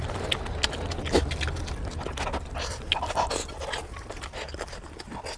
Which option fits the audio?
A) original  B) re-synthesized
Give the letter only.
A